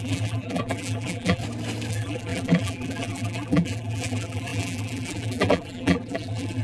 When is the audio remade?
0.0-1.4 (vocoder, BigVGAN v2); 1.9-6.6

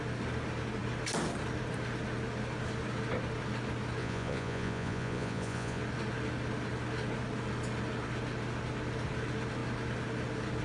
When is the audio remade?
4.0-5.8 (vocoder, Vocos)

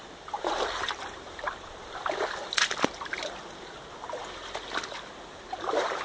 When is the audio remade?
0.0-1.8 (vocoder, BigVGAN v2); 5.4-6.0